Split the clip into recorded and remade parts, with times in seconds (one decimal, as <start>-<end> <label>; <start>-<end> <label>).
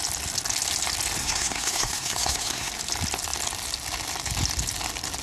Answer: 0.0-1.2 recorded; 1.2-2.7 remade; 2.7-5.2 recorded